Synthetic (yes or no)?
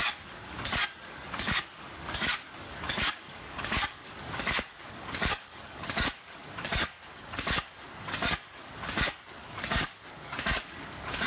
yes